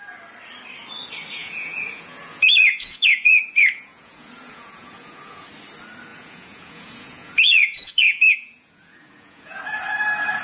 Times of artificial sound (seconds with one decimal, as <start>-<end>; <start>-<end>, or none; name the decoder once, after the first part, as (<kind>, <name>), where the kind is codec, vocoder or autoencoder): 1.4-5.5 (vocoder, Vocos); 6.1-9.6